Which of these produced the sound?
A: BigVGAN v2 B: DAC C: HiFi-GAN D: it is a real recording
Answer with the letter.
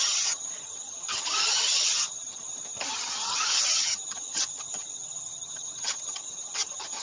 C